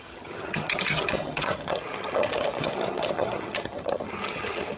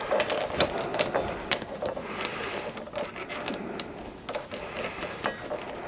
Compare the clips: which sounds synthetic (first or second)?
first